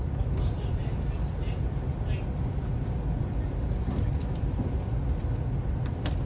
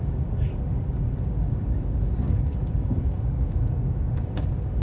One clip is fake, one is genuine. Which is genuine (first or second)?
first